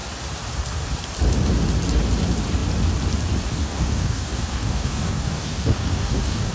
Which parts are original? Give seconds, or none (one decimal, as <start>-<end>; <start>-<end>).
0.0-3.6